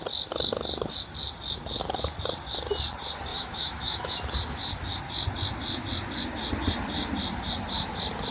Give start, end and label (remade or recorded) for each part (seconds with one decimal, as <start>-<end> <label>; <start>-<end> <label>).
0.0-3.3 recorded; 3.3-4.1 remade; 4.1-8.3 recorded